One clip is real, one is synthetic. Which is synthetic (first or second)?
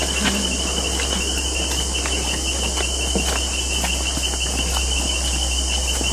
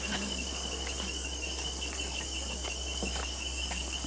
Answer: second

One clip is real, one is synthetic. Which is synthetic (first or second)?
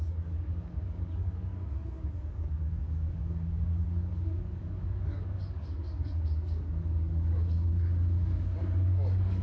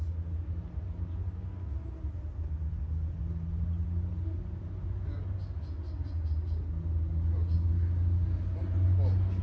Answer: first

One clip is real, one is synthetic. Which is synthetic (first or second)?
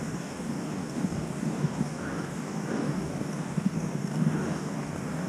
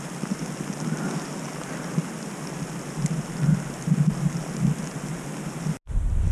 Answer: first